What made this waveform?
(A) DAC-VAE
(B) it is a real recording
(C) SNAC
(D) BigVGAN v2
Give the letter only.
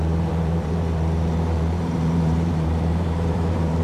D